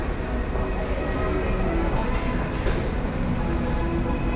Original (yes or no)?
yes